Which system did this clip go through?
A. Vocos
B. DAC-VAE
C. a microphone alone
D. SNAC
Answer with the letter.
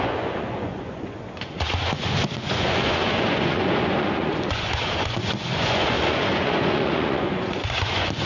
A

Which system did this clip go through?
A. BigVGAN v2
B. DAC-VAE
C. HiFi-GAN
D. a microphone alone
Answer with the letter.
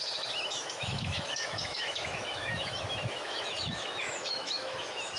B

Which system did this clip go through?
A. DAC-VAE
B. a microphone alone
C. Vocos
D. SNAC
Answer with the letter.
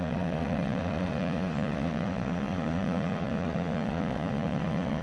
C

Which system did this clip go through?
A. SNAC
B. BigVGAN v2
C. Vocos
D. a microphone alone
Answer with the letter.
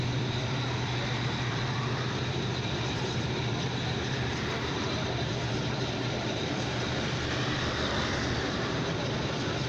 B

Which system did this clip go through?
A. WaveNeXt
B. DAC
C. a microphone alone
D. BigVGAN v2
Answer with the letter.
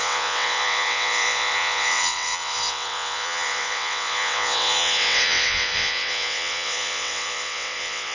A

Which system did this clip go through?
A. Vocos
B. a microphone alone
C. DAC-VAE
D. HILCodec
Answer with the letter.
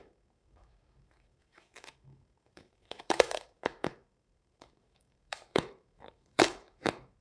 C